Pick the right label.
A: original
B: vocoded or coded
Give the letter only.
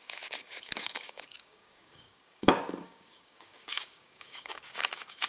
B